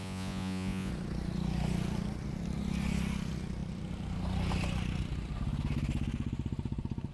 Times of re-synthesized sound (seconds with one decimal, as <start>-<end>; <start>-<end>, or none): 0.0-0.9